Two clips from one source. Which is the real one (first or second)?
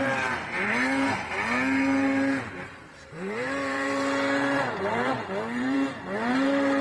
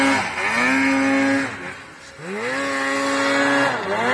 second